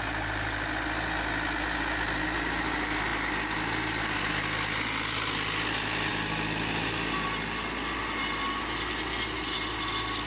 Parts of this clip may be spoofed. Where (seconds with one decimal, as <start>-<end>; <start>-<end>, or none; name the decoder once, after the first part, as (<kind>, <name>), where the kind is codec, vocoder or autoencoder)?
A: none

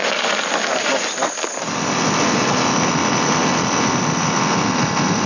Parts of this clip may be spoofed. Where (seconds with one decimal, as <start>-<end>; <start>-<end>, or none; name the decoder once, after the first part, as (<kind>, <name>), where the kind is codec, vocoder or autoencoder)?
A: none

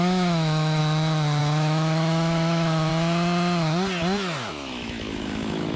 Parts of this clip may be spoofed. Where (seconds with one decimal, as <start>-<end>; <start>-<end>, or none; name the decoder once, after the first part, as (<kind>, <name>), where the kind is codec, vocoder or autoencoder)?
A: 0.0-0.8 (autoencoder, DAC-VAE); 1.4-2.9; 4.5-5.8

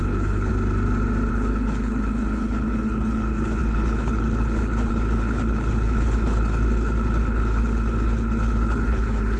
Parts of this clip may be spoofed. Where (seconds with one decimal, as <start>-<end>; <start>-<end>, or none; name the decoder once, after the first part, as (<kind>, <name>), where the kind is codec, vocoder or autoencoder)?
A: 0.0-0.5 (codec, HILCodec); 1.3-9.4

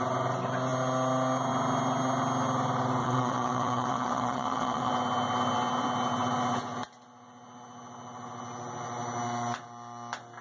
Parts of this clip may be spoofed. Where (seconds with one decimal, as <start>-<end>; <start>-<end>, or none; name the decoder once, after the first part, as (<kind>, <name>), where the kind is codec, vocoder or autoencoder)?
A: 3.0-4.9 (vocoder, WaveNeXt)

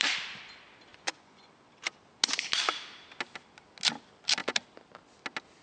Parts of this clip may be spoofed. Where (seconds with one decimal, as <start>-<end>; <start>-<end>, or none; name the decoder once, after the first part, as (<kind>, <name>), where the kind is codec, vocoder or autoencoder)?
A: 0.9-1.5 (vocoder, Vocos)

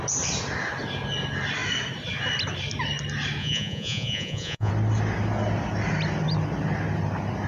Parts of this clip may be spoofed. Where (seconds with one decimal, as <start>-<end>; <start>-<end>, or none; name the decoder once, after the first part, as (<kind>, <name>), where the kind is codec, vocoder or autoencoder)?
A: 3.4-4.7 (vocoder, Vocos)

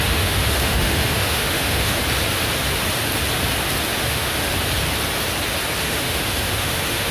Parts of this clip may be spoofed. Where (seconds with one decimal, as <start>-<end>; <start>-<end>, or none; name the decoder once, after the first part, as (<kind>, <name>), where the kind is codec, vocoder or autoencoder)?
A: 0.0-2.0 (autoencoder, DAC-VAE); 3.9-4.5; 5.8-7.1